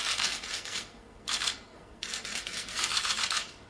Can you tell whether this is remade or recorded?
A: remade